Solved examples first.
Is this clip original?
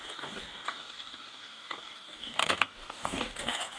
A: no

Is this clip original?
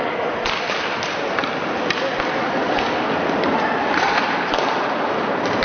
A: yes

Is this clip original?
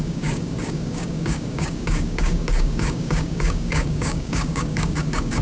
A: no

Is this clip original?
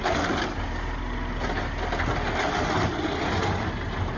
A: yes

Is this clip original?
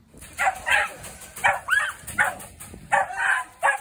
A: yes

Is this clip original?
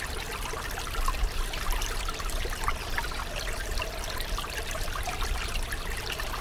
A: yes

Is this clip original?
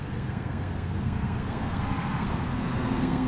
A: no